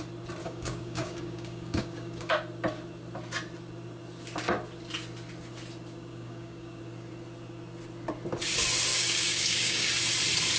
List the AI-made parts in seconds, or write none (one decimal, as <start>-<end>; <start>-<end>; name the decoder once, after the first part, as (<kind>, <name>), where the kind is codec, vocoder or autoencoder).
0.4-2.3 (codec, DAC); 6.1-6.8; 8.9-9.9

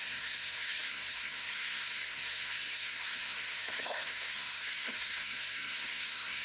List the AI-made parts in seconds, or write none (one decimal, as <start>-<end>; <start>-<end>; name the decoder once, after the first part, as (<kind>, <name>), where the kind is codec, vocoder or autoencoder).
0.0-6.4 (codec, SNAC)

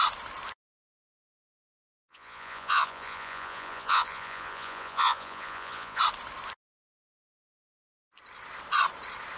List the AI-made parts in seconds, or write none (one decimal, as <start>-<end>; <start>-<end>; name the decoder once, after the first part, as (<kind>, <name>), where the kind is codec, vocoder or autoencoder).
0.8-6.0 (vocoder, Vocos)

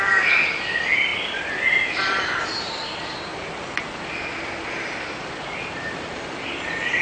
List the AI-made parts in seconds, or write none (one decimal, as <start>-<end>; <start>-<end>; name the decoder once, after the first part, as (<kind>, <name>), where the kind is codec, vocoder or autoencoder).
1.1-4.0 (vocoder, BigVGAN v2)

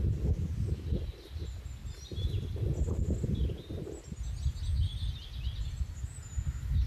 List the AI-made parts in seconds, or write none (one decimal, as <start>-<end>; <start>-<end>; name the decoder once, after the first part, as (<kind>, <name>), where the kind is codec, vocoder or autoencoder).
1.8-3.6 (vocoder, BigVGAN v2)